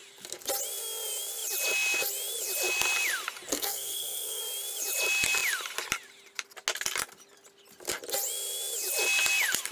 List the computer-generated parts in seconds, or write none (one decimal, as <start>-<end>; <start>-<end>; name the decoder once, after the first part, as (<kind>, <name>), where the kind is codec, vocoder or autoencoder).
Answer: 3.5-4.4 (codec, SNAC)